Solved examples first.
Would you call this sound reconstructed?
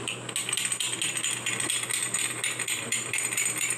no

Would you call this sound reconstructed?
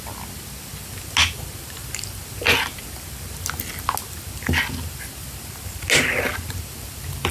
no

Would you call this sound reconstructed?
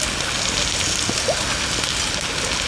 no